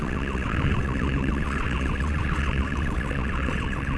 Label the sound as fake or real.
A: fake